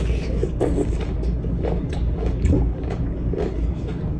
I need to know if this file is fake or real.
fake